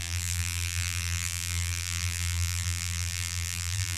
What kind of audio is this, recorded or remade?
remade